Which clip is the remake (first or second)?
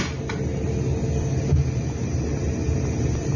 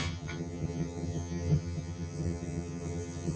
second